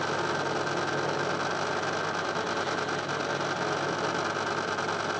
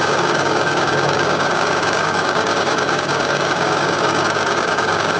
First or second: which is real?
first